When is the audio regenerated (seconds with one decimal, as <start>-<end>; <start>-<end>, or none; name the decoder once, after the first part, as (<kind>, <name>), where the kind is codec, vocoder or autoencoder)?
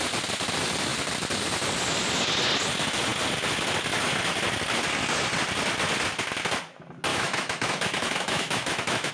7.1-9.1 (autoencoder, DAC-VAE)